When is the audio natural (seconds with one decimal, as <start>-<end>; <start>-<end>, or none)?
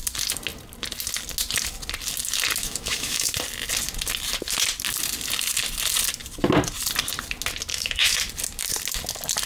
0.0-2.6; 3.3-7.7; 8.2-9.5